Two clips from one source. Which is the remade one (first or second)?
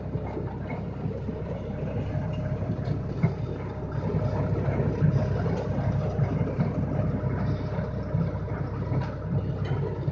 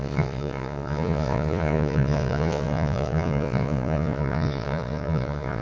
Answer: second